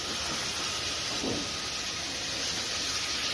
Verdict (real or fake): real